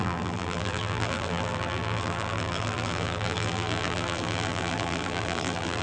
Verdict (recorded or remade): remade